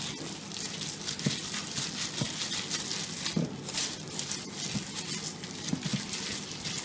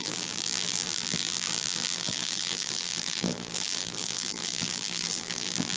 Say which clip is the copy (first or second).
second